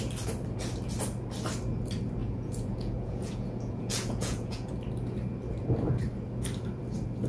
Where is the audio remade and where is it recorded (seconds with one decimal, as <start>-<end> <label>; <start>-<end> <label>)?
0.0-2.2 recorded; 2.2-4.7 remade; 4.7-7.3 recorded